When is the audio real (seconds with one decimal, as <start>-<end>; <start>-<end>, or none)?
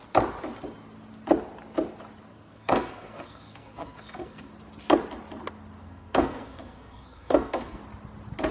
0.0-2.3; 4.5-5.8; 7.8-8.5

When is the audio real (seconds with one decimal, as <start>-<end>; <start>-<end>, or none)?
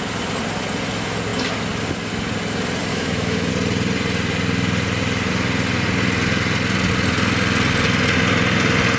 0.0-2.9; 3.5-9.0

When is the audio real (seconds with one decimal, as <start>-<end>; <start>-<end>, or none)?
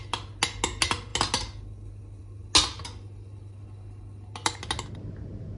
0.0-5.6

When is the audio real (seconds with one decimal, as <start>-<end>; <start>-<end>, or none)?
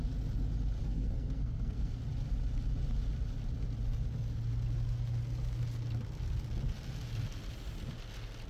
0.0-0.8; 2.0-8.5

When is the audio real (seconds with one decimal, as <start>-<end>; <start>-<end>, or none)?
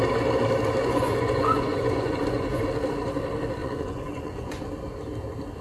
0.0-0.8; 2.6-3.6; 4.7-5.6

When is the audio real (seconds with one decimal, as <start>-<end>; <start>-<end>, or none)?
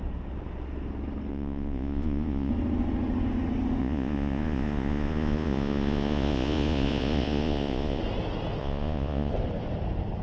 0.0-1.3; 2.5-3.8; 8.0-8.6; 9.3-10.2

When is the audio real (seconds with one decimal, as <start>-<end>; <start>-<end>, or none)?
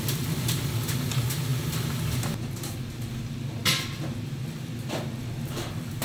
0.0-6.0